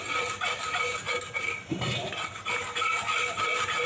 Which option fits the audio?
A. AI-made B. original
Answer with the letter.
B